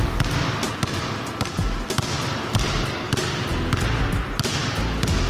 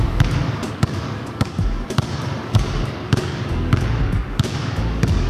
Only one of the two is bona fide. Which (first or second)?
first